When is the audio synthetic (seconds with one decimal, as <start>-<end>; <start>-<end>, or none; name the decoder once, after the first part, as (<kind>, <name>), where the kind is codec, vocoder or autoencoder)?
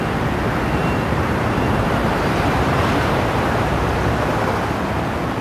0.8-4.0 (vocoder, BigVGAN v2)